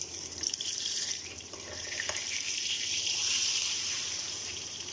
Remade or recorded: remade